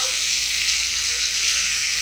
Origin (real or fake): fake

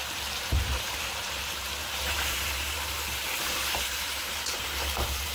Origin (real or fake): fake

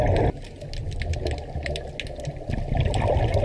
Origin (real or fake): real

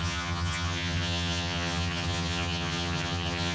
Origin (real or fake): fake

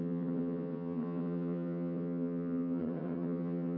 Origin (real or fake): fake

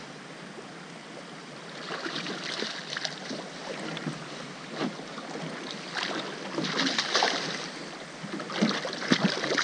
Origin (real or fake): real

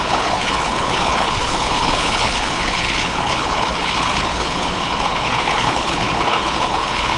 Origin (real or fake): fake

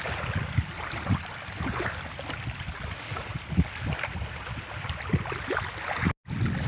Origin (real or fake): real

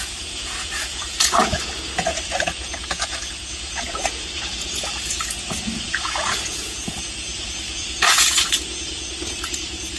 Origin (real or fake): fake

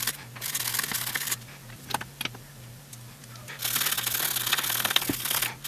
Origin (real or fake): real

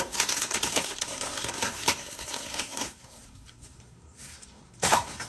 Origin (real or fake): fake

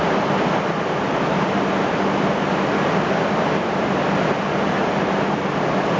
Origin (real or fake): real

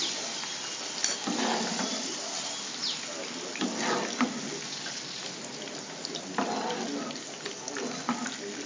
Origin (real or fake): real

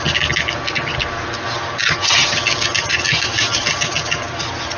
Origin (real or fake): real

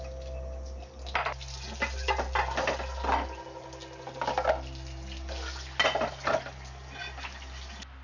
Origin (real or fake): real